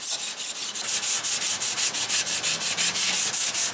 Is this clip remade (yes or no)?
no